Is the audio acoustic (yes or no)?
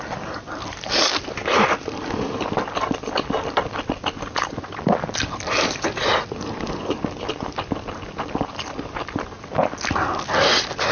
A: yes